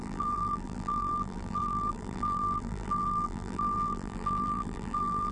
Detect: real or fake fake